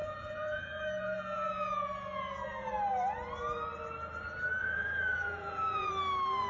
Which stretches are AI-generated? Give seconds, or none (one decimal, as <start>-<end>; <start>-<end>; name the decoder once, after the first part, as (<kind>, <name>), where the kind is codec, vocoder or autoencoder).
0.0-2.7 (vocoder, Vocos); 4.6-5.9